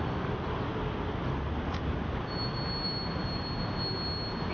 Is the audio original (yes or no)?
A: yes